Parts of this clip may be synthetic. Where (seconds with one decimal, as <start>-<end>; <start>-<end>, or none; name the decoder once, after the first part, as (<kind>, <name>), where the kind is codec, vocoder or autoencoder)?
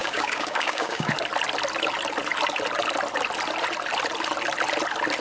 0.0-1.1 (codec, DAC)